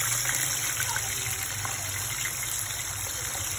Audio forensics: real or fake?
real